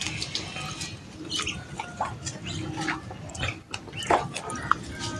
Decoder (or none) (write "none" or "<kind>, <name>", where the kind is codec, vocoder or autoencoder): none